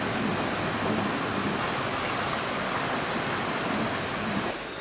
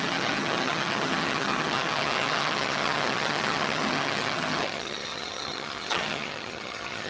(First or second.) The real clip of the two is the first